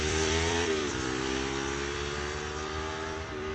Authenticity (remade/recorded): remade